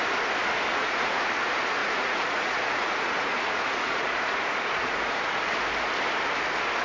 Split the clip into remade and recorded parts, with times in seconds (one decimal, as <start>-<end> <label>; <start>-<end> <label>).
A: 0.0-0.7 recorded; 0.7-1.3 remade; 1.3-1.8 recorded; 1.8-5.4 remade; 5.4-6.8 recorded